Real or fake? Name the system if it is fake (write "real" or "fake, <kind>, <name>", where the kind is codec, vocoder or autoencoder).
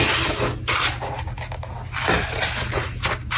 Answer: real